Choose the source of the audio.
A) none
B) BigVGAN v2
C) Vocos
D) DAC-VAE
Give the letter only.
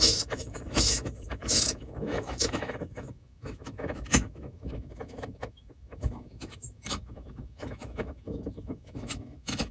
D